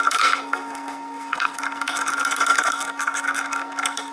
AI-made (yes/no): yes